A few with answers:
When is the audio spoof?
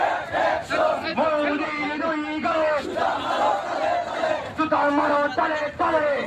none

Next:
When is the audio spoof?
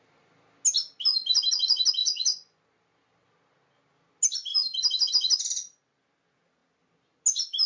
2.0-2.6 (vocoder, Vocos)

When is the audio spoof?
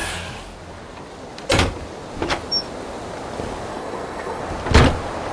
3.7-4.4 (codec, SNAC)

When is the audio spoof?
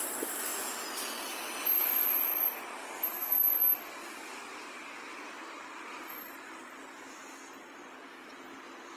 4.0-7.4 (vocoder, BigVGAN v2)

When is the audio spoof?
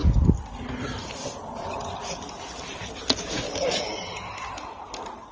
none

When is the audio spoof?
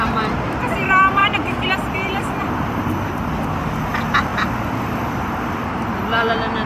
none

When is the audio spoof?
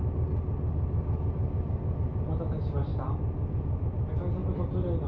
none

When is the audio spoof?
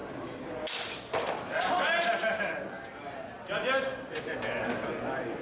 none